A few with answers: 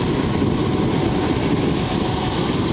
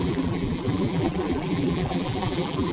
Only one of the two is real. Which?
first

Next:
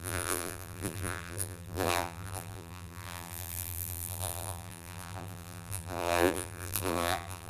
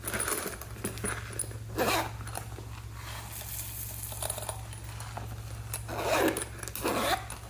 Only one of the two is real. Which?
second